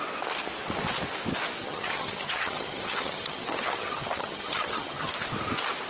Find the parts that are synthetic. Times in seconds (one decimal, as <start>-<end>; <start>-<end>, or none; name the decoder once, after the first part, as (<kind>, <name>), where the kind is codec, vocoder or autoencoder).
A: 1.6-5.1 (vocoder, HiFi-GAN)